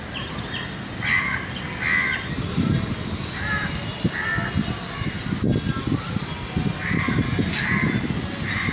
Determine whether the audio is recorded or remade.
recorded